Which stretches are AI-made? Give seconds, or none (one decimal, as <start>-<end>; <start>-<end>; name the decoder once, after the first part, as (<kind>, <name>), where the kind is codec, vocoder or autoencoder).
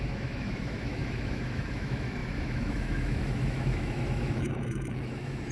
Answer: 0.0-5.5 (autoencoder, DAC-VAE)